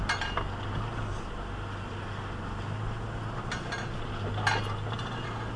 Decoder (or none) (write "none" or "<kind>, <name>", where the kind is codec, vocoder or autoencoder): none